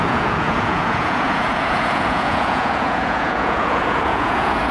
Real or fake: fake